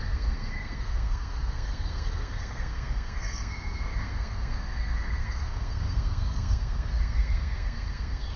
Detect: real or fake fake